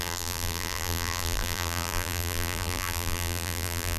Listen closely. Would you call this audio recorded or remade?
remade